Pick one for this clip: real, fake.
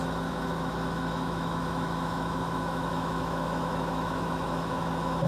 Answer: fake